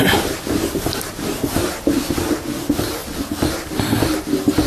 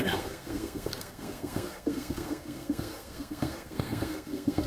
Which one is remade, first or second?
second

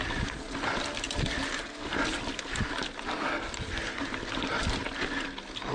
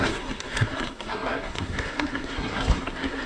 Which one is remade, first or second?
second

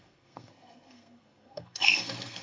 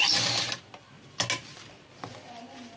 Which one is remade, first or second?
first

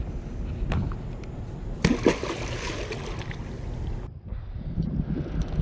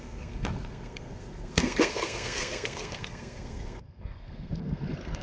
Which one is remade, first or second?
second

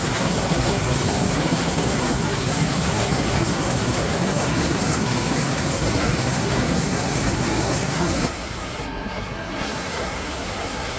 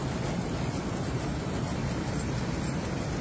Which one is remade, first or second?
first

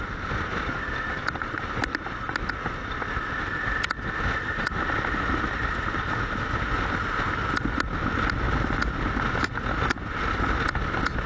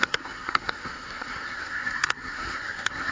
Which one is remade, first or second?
second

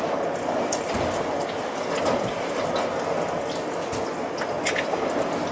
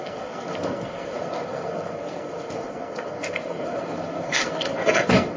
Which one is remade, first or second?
second